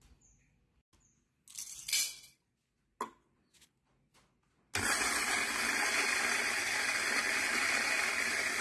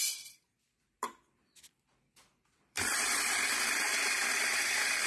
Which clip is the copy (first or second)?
second